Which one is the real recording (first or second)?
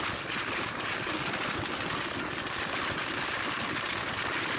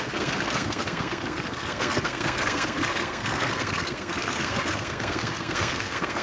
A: first